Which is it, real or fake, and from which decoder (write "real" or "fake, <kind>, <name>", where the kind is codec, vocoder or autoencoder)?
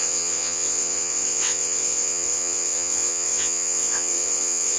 fake, vocoder, WaveNeXt